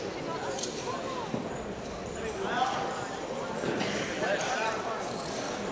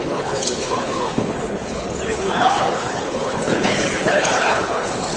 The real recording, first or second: first